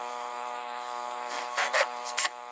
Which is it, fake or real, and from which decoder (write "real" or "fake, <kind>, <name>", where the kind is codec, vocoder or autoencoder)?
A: fake, codec, SNAC